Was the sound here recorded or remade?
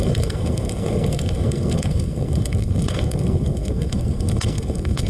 remade